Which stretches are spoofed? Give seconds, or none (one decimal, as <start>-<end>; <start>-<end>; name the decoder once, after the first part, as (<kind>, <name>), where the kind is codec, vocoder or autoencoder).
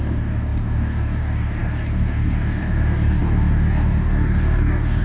0.0-5.0 (codec, DAC)